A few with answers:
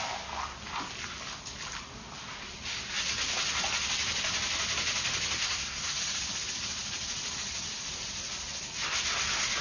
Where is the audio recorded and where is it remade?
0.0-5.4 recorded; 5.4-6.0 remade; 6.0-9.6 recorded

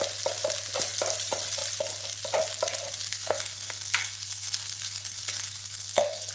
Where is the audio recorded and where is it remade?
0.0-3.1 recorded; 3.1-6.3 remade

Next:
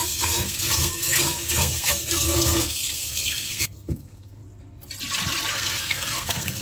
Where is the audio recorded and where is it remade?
0.0-4.4 remade; 4.4-5.5 recorded; 5.5-6.6 remade

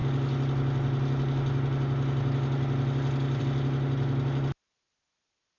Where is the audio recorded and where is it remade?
0.0-5.6 recorded

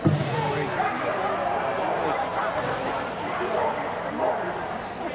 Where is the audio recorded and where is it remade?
0.0-5.1 recorded